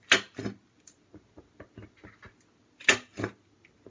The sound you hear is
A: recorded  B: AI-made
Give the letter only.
A